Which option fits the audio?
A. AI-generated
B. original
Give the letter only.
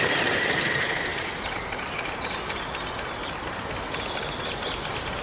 B